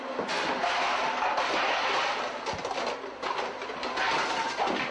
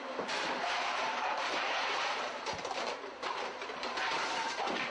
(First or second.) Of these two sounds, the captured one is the first